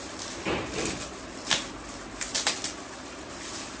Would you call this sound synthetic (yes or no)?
no